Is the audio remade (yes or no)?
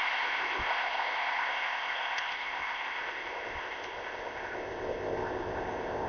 yes